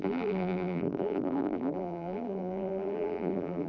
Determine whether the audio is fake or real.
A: fake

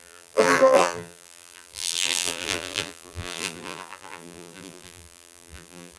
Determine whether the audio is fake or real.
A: fake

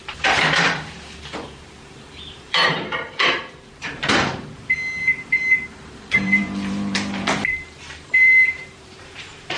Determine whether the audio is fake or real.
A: fake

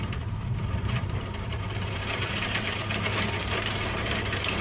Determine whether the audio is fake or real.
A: fake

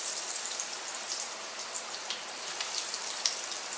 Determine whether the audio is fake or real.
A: fake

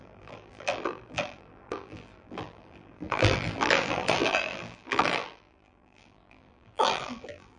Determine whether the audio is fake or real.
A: fake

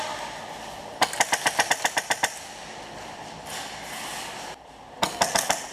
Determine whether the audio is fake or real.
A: real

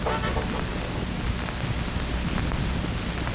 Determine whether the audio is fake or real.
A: real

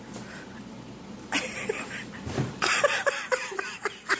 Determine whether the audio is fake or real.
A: fake